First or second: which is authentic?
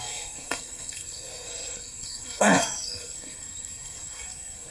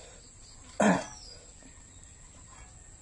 second